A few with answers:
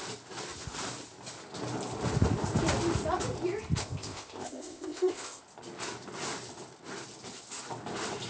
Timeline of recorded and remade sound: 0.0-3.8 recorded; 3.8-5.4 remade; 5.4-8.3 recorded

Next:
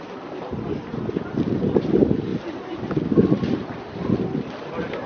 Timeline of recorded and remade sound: 0.0-5.1 recorded

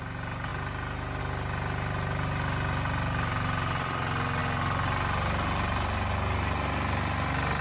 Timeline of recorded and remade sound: 0.0-7.6 recorded

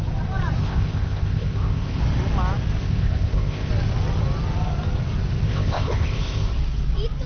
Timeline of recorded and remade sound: 0.0-0.6 recorded; 0.6-2.0 remade; 2.0-2.8 recorded; 2.8-3.7 remade; 3.7-5.5 recorded; 5.5-6.5 remade; 6.5-7.3 recorded

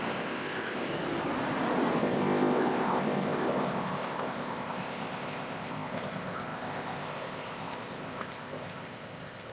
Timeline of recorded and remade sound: 0.0-0.9 remade; 0.9-2.0 recorded; 2.0-9.5 remade

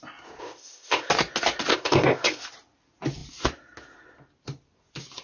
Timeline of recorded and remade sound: 0.0-0.4 recorded; 0.4-1.1 remade; 1.1-1.7 recorded; 1.7-2.4 remade; 2.4-5.2 recorded